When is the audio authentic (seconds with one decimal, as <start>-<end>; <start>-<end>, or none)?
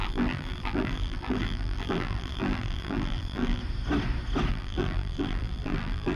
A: 3.6-4.5